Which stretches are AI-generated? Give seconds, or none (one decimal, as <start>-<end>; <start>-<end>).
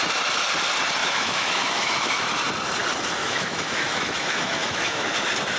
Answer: 1.0-2.3; 3.2-5.1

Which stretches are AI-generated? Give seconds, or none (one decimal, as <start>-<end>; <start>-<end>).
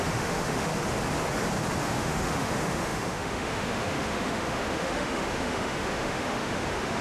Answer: 0.0-0.7; 1.8-7.0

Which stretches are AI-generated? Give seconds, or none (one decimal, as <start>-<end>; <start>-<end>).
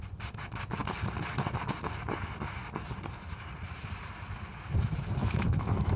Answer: 5.2-6.0